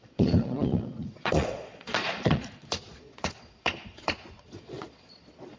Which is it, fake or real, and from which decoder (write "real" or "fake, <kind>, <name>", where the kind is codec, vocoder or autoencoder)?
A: fake, vocoder, Vocos